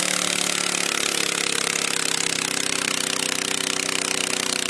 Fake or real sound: real